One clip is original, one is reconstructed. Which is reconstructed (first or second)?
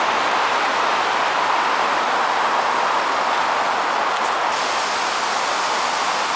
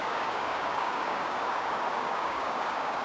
second